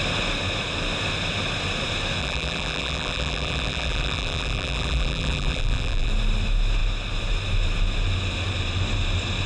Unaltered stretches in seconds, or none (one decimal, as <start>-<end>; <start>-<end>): 0.0-2.2; 6.1-9.5

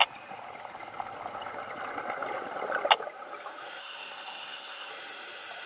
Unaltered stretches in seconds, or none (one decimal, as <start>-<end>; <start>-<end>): 0.0-3.8; 4.9-5.7

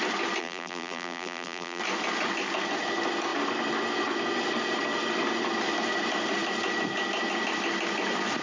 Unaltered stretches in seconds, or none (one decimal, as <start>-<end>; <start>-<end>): 0.0-0.4; 1.8-8.4

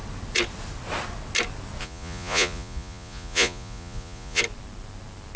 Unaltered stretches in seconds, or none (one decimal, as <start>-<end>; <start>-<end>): 0.0-1.8; 4.4-5.4

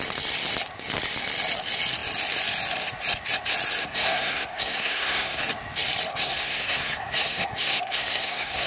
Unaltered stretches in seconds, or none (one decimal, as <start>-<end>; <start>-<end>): 0.0-3.8; 5.4-6.1

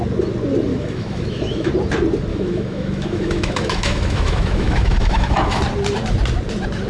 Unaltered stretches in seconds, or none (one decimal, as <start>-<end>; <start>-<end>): 0.0-0.7; 1.7-2.3; 5.6-6.9

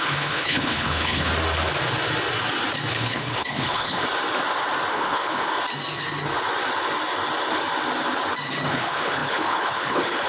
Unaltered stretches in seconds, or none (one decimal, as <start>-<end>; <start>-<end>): 1.3-2.9; 4.0-4.9; 5.5-8.7

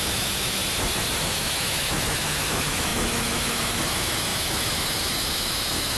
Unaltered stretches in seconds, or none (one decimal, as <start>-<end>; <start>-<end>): 0.6-1.2